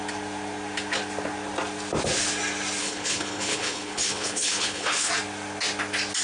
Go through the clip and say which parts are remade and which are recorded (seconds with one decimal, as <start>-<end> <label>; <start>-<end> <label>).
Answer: 0.0-2.8 recorded; 2.8-5.1 remade; 5.1-6.2 recorded